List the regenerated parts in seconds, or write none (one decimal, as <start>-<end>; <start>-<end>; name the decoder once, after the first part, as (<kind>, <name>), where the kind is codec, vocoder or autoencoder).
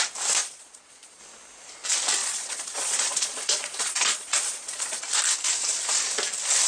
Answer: 0.4-1.2 (vocoder, Vocos); 2.2-5.0